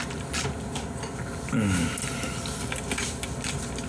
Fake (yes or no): no